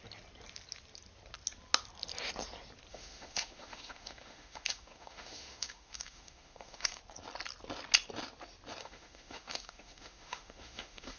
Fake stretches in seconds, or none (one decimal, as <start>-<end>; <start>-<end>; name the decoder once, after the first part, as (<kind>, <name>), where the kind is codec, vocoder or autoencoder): 2.9-7.0 (autoencoder, DAC-VAE); 8.8-11.2